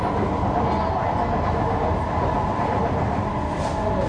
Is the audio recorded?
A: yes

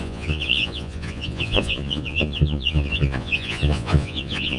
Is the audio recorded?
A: no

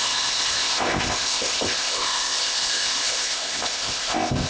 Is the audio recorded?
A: no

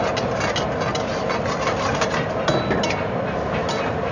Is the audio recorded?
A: yes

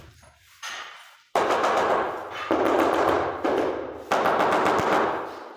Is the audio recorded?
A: yes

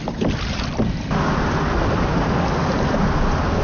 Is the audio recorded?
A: yes